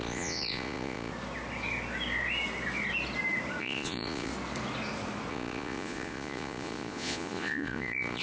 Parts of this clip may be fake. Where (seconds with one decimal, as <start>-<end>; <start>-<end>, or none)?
0.0-1.1; 3.6-4.3; 5.3-8.2